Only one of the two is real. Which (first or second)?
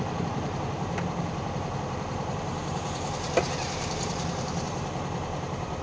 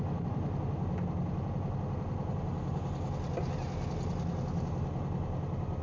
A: second